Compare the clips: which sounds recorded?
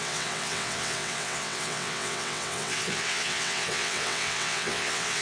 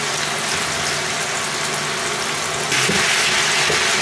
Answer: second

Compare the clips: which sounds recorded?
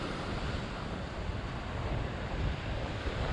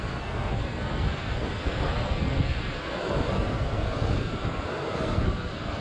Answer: first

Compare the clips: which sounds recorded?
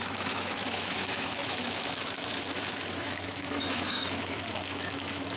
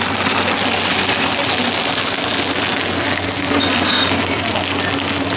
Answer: second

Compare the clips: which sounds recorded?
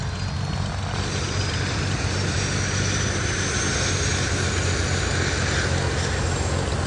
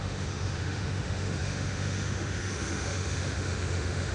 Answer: first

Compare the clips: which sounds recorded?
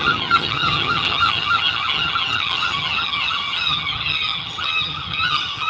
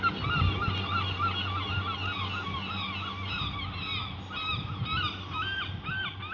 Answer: second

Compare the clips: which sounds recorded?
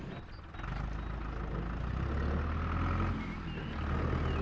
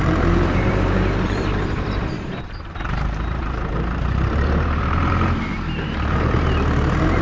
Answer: first